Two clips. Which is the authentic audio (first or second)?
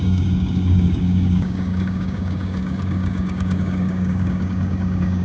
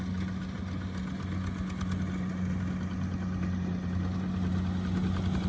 second